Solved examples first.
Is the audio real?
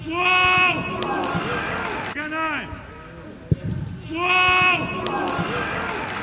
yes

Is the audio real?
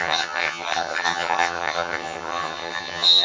no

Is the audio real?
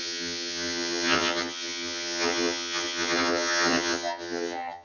no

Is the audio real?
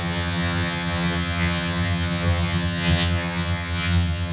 no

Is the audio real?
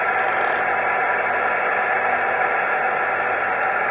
yes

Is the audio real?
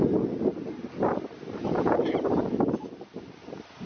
yes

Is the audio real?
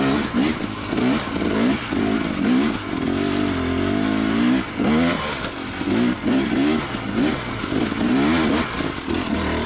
yes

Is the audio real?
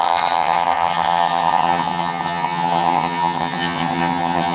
no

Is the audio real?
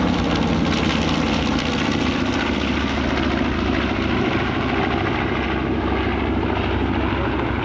yes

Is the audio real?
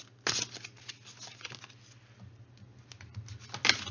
yes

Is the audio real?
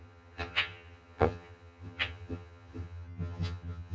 no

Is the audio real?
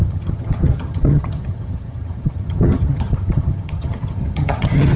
no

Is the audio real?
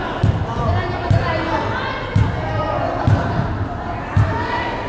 yes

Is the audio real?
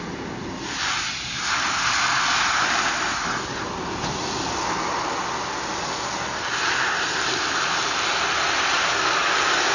yes